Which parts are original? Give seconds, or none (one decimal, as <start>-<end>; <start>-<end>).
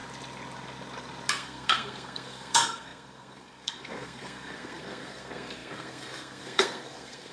0.0-1.3